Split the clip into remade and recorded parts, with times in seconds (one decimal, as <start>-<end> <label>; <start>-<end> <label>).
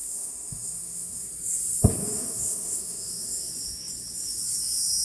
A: 0.0-1.3 remade; 1.3-2.0 recorded; 2.0-3.5 remade; 3.5-5.0 recorded